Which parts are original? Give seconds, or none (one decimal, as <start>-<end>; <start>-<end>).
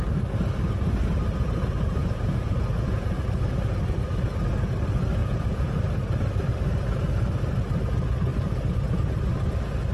0.0-2.0; 3.2-5.2; 5.8-9.9